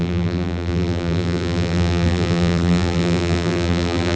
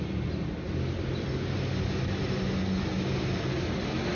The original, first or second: second